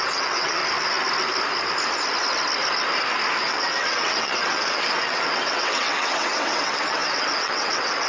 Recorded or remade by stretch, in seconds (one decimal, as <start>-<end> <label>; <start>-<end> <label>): 0.0-0.6 remade; 0.6-3.4 recorded; 3.4-8.1 remade